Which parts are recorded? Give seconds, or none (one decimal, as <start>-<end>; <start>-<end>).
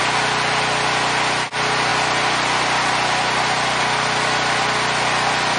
0.0-5.6